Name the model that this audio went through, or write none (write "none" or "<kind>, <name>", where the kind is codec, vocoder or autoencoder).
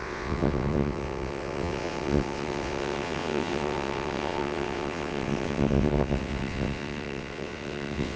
vocoder, WaveNeXt